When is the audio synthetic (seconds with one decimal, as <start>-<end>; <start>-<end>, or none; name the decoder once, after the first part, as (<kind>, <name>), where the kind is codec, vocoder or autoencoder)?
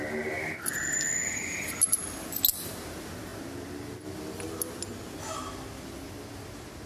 none